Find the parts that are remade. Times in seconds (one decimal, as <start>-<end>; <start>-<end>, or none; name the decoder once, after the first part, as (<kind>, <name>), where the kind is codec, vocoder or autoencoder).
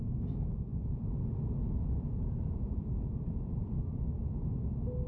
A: 0.7-3.8 (vocoder, Vocos)